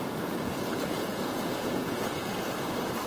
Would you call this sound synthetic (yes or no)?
yes